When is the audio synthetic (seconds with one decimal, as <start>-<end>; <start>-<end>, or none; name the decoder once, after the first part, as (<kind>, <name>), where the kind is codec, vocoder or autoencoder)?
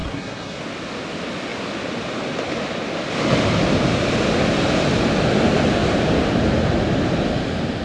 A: 0.0-0.6 (codec, SNAC)